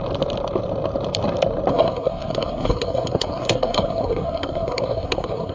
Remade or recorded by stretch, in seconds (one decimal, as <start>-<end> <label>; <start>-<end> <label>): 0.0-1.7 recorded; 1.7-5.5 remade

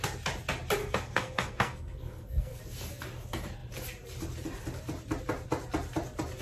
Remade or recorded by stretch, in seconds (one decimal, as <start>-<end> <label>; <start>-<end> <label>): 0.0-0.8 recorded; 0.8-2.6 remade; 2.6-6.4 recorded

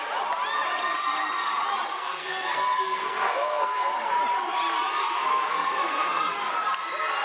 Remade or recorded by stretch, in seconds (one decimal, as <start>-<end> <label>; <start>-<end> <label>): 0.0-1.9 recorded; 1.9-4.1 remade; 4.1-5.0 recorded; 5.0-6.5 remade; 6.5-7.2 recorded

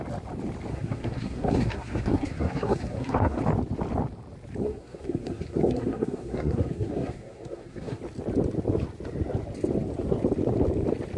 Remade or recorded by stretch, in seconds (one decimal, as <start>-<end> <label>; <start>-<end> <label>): 0.0-0.7 recorded; 0.7-3.4 remade; 3.4-4.6 recorded; 4.6-8.0 remade; 8.0-11.2 recorded

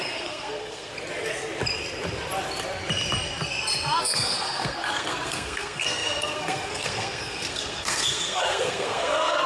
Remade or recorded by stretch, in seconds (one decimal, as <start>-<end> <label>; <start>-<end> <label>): 0.0-0.9 remade; 0.9-4.0 recorded; 4.0-9.5 remade